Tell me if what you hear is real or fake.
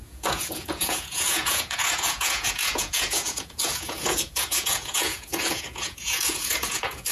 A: fake